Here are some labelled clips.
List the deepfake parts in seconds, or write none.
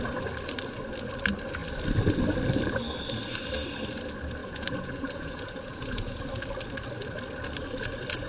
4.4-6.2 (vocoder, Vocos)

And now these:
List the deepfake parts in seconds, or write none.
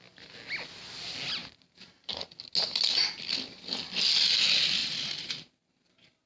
1.4-2.2 (vocoder, BigVGAN v2); 4.8-6.3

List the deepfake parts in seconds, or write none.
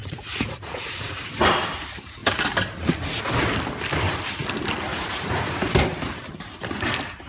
0.0-1.2 (vocoder, Vocos); 4.9-5.6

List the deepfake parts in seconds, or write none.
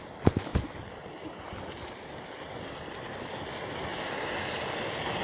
0.5-2.1 (vocoder, BigVGAN v2); 3.9-4.6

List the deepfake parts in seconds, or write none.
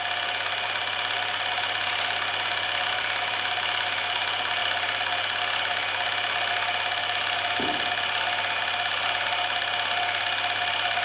none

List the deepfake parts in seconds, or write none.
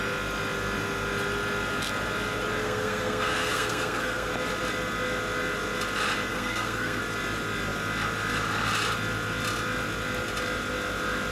2.6-4.3 (codec, SNAC); 6.3-7.0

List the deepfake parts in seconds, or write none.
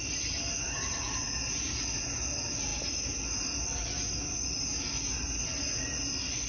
none